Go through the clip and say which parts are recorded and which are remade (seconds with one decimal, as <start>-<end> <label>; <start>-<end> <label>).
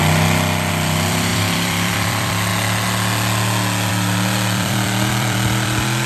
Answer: 0.0-0.7 recorded; 0.7-2.5 remade; 2.5-3.9 recorded; 3.9-6.1 remade